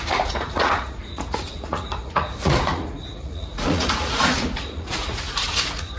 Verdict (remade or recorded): remade